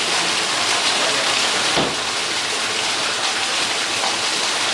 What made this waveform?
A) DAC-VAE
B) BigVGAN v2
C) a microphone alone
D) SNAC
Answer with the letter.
C